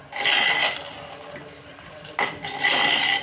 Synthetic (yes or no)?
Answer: no